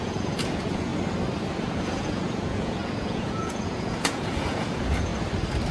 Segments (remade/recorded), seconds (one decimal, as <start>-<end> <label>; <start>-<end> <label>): 0.0-0.9 remade; 0.9-1.4 recorded; 1.4-5.1 remade; 5.1-5.7 recorded